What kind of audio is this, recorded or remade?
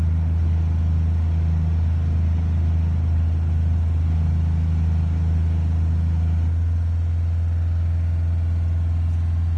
recorded